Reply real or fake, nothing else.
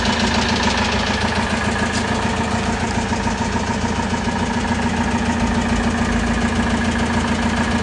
real